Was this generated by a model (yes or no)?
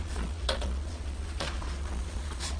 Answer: yes